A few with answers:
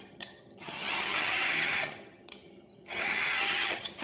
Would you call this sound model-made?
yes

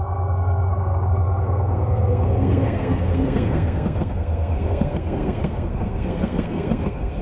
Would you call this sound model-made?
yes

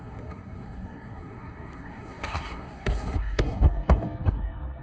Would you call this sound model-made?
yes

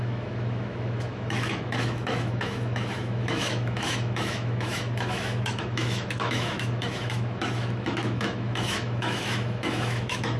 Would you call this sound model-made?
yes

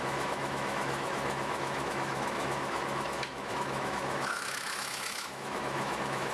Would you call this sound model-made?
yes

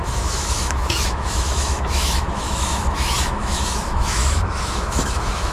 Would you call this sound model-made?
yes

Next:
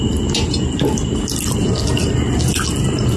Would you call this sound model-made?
no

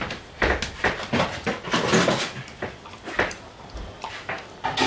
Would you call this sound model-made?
no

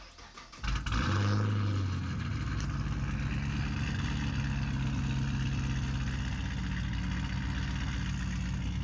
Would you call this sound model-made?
no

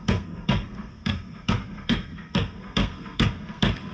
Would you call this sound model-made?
yes